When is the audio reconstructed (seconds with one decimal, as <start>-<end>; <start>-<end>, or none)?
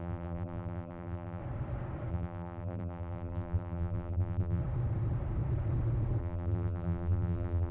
0.0-1.4; 2.1-4.6; 6.2-7.7